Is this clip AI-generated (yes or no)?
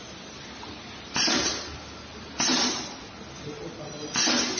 no